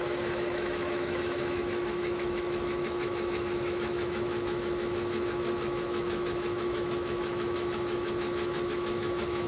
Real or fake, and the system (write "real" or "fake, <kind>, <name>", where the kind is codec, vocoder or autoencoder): fake, autoencoder, DAC-VAE